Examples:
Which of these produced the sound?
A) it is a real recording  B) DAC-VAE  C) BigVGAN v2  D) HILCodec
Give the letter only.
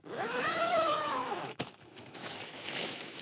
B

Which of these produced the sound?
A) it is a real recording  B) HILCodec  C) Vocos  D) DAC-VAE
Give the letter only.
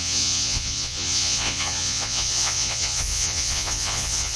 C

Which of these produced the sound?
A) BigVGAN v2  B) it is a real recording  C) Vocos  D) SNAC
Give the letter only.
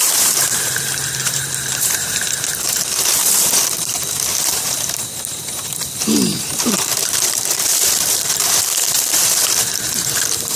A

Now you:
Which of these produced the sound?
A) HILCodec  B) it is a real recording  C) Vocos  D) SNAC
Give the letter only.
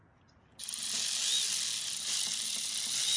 B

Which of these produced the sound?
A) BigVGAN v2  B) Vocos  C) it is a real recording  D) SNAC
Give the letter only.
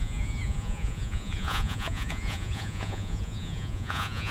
B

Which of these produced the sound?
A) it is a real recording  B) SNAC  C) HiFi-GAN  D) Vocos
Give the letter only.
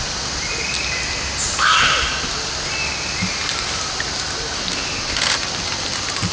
A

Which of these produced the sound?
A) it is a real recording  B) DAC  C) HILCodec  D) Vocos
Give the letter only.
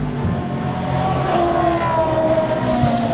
A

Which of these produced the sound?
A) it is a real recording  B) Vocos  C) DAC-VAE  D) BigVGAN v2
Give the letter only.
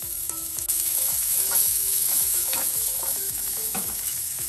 C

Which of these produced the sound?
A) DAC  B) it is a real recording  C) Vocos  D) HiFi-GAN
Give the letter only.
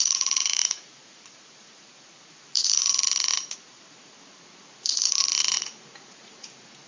C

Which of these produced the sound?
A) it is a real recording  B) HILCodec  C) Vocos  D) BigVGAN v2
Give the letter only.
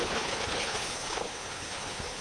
B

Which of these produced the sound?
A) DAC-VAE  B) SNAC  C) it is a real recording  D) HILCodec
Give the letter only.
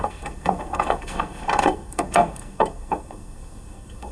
B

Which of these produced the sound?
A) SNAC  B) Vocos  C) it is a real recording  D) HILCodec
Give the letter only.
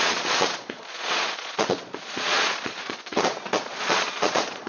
B